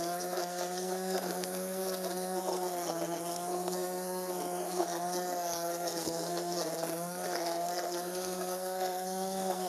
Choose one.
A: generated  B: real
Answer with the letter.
A